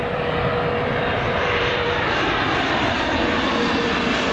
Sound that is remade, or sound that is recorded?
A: remade